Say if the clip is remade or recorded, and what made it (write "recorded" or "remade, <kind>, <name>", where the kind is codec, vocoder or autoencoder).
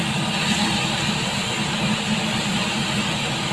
recorded